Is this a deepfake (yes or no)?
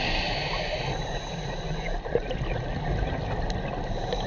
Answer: no